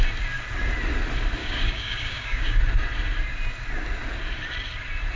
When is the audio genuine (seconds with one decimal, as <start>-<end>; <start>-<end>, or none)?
0.0-1.4; 2.6-5.2